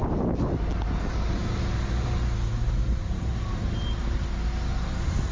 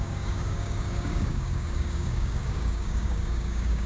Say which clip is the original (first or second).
first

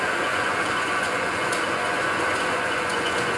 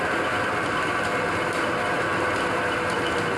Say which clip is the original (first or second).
second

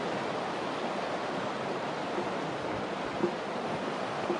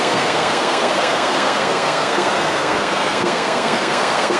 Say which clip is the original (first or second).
first